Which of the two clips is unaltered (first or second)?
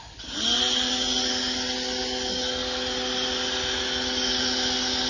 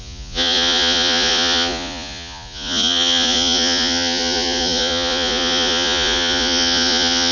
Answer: first